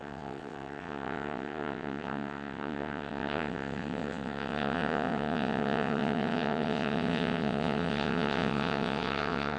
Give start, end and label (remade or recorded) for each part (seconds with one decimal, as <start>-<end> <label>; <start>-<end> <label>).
0.0-9.6 remade